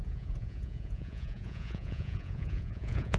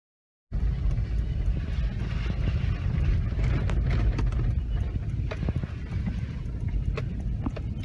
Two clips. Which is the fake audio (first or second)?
first